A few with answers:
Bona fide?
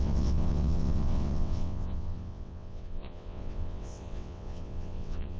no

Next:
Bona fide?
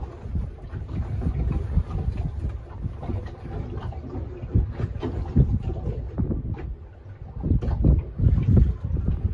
yes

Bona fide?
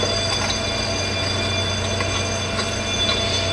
yes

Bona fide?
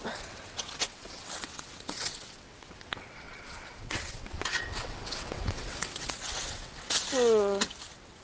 no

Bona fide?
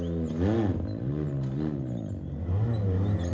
yes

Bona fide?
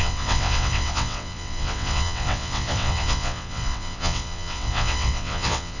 no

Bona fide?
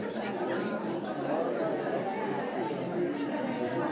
yes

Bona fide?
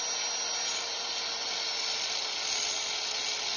yes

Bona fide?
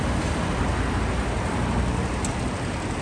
yes